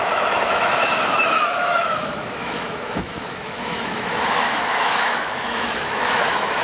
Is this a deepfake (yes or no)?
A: yes